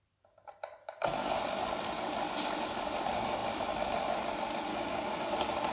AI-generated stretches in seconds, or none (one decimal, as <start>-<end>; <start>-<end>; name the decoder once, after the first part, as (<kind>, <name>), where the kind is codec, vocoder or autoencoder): 0.8-1.4 (codec, DAC); 4.7-5.3